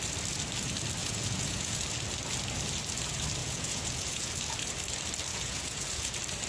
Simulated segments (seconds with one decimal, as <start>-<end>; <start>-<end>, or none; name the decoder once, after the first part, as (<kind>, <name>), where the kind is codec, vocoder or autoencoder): 1.0-1.8 (vocoder, Vocos); 3.4-4.3; 5.3-6.1